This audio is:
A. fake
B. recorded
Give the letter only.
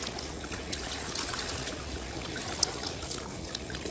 A